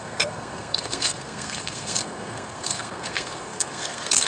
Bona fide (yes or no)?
no